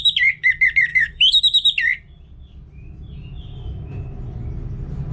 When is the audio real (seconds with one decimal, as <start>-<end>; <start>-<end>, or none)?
0.0-0.9; 1.4-5.1